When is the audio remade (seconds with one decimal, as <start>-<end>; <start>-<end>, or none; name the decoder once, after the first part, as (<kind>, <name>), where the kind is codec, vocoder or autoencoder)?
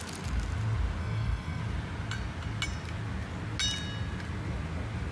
1.0-1.6 (codec, SNAC)